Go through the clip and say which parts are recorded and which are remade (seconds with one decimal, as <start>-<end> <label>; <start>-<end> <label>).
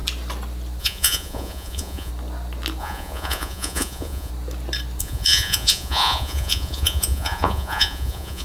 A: 0.0-0.8 recorded; 0.8-2.1 remade; 2.1-2.8 recorded; 2.8-4.3 remade; 4.3-5.0 recorded; 5.0-8.4 remade